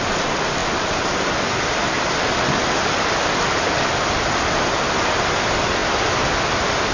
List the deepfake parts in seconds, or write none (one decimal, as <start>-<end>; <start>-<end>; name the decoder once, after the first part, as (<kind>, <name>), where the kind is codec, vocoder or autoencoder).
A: none